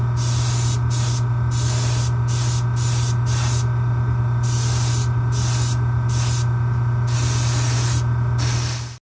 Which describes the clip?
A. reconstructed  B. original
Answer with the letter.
B